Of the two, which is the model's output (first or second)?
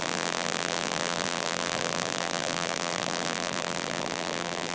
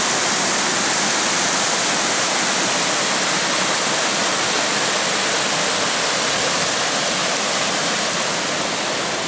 first